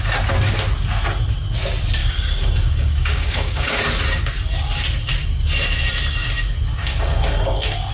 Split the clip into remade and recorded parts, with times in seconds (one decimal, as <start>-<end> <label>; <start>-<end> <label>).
0.0-2.0 recorded; 2.0-3.8 remade; 3.8-6.8 recorded; 6.8-7.9 remade